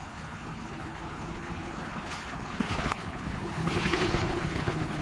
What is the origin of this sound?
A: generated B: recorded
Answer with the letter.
A